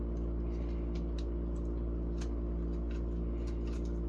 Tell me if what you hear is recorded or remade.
recorded